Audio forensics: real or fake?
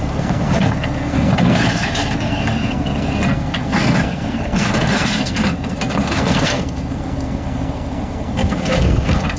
fake